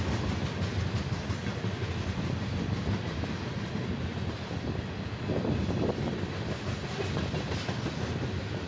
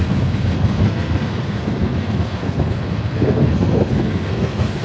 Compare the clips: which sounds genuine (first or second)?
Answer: first